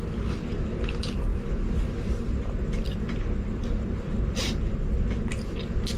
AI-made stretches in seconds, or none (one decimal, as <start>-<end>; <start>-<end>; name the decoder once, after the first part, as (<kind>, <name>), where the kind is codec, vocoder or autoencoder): none